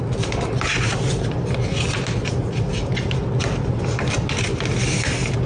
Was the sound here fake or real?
real